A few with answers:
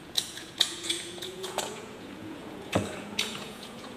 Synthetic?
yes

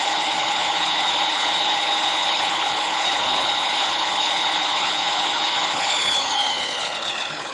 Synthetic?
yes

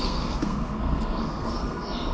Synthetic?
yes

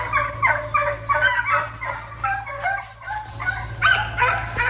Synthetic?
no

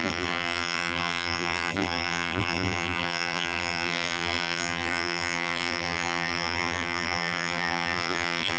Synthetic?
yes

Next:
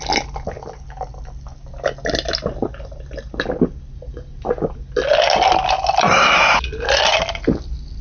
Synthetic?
no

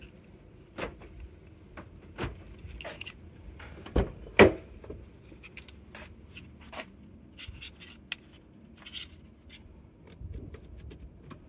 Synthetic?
no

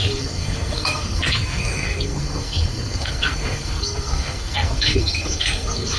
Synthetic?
yes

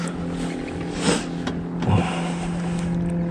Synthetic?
no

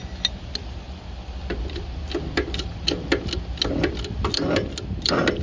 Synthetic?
no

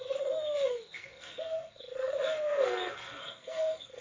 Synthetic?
yes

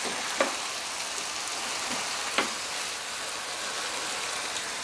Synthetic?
no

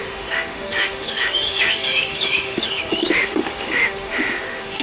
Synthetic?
yes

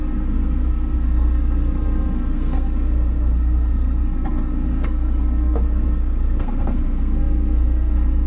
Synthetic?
yes